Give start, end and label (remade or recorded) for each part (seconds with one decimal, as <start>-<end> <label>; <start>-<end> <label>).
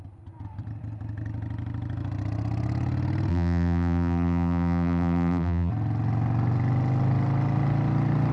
0.0-3.3 recorded; 3.3-5.7 remade; 5.7-8.3 recorded